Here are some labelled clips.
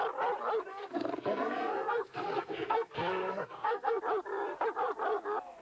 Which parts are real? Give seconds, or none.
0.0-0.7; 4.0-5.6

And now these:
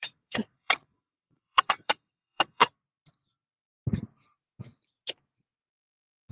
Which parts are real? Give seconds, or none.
2.6-6.3

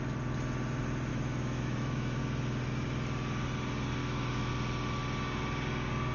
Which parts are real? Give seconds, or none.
0.0-1.1; 2.2-4.0; 4.5-6.1

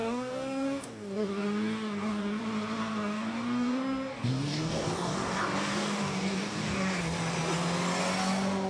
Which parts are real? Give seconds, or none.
2.4-2.8; 7.0-8.7

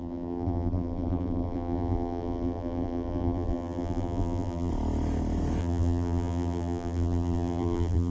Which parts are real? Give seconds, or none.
4.7-5.6

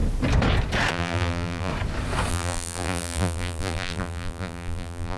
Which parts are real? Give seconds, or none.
0.0-0.9; 1.7-2.3

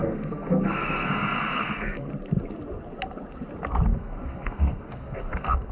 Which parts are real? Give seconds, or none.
2.1-3.9

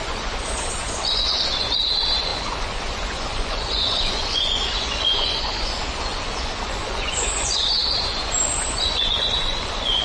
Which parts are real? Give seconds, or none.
none